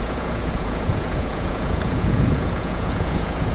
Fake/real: fake